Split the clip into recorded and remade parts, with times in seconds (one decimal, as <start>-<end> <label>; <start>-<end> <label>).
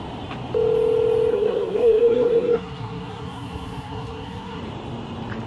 0.0-1.3 recorded; 1.3-4.6 remade; 4.6-5.5 recorded